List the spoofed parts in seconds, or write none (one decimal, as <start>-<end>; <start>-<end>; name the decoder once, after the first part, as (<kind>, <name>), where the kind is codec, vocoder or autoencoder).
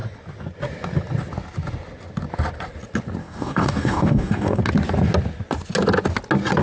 3.2-4.6 (codec, DAC)